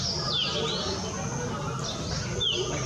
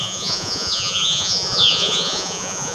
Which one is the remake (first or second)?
second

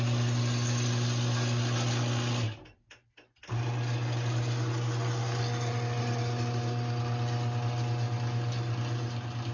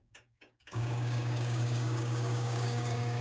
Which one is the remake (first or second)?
second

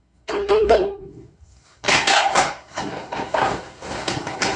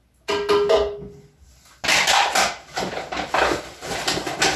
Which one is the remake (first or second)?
first